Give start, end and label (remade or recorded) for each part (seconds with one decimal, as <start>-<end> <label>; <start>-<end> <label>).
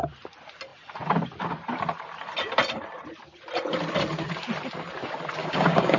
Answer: 0.0-5.4 recorded; 5.4-6.0 remade